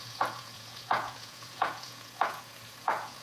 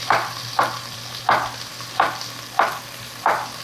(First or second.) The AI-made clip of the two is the first